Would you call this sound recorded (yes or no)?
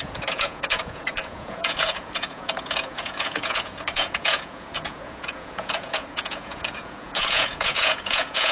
no